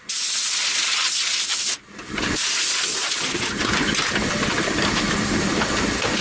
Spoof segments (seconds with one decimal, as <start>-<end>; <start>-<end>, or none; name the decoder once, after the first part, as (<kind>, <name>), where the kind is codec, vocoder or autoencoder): none